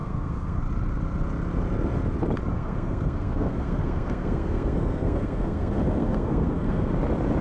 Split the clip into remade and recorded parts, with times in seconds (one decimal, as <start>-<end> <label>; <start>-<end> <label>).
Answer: 0.0-0.6 remade; 0.6-2.5 recorded; 2.5-6.9 remade; 6.9-7.4 recorded